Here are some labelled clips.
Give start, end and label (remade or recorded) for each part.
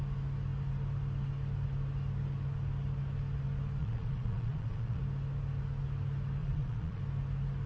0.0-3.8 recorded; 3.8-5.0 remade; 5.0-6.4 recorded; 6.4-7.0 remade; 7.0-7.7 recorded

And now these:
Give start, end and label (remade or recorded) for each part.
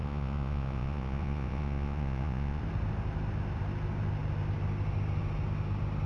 0.0-2.6 remade; 2.6-6.1 recorded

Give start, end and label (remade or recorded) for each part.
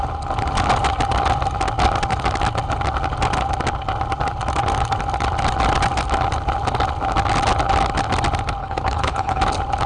0.0-8.6 recorded; 8.6-9.4 remade; 9.4-9.9 recorded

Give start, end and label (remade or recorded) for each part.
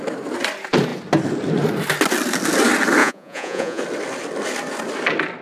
0.0-3.0 recorded; 3.0-3.8 remade; 3.8-5.4 recorded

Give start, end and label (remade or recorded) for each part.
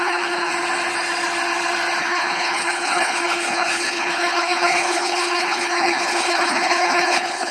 0.0-0.5 remade; 0.5-2.0 recorded; 2.0-7.5 remade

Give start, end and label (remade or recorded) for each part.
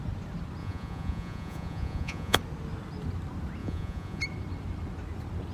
0.0-0.6 recorded; 0.6-2.4 remade; 2.4-3.6 recorded; 3.6-4.2 remade; 4.2-5.5 recorded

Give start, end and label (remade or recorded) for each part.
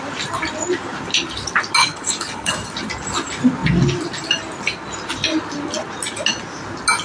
0.0-1.8 recorded; 1.8-2.5 remade; 2.5-7.0 recorded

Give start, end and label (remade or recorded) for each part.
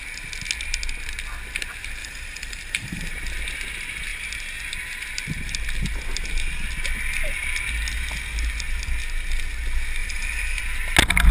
0.0-2.0 recorded; 2.0-3.1 remade; 3.1-10.0 recorded; 10.0-10.6 remade; 10.6-11.3 recorded